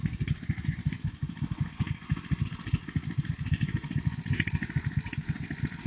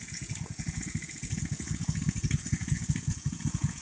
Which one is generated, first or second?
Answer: second